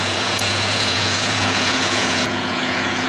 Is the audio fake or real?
fake